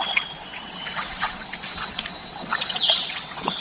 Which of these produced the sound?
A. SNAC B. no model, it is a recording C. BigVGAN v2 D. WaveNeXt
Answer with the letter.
D